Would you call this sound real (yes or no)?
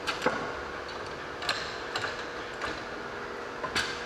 yes